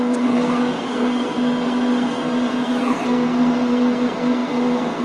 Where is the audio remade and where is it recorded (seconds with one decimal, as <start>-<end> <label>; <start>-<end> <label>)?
0.0-5.0 remade